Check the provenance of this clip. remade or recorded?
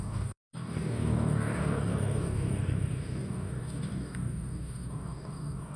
remade